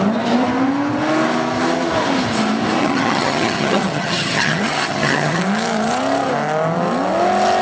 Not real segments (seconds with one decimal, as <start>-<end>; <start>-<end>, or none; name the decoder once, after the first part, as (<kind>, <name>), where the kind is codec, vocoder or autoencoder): 2.8-5.4 (vocoder, HiFi-GAN)

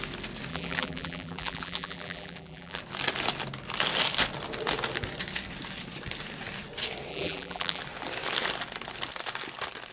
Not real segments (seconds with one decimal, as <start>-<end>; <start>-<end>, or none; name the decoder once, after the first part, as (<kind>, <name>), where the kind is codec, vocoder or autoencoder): 0.5-2.8 (vocoder, BigVGAN v2); 7.1-7.8

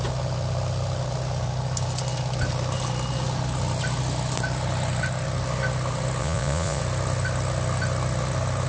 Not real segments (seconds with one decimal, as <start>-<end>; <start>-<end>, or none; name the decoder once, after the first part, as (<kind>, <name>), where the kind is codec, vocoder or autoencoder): 6.2-6.8 (vocoder, Vocos)

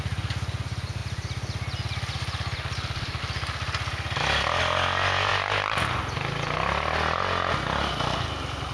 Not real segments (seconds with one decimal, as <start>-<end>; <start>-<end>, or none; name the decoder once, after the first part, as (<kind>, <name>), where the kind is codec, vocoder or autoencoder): none

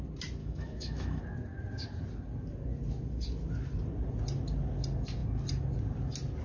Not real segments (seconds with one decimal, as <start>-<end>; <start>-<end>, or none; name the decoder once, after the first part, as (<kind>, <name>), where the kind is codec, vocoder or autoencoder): 0.4-1.2 (autoencoder, DAC-VAE)